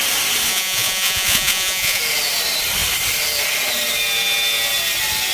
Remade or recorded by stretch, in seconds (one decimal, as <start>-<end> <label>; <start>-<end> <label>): 0.0-0.5 recorded; 0.5-2.0 remade; 2.0-5.3 recorded